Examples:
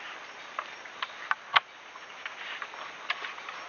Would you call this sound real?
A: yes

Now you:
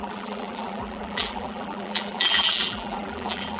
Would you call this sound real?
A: no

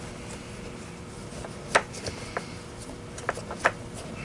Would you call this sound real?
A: yes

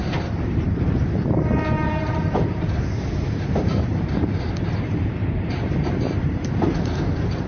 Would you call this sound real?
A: no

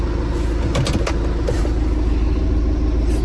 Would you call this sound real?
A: yes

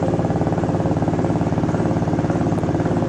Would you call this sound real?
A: no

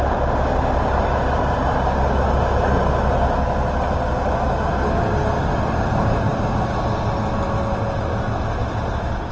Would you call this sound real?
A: yes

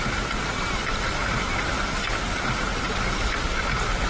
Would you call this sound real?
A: yes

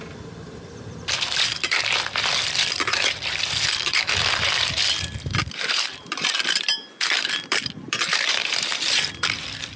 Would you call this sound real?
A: no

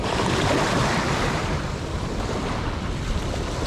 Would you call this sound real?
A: no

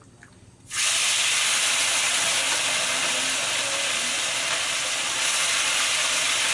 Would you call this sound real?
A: yes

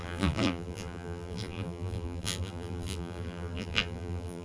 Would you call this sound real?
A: no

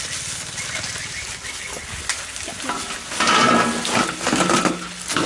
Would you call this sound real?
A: yes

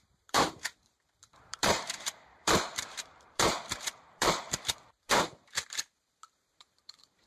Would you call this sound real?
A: no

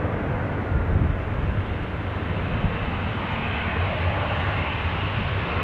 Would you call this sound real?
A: yes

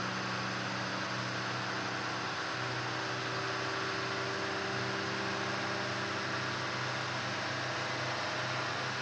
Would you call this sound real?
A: yes